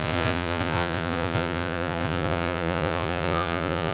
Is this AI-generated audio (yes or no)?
yes